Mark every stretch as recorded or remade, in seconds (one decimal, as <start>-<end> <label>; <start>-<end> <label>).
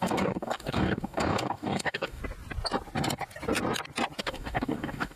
0.0-2.2 remade; 2.2-4.2 recorded; 4.2-5.2 remade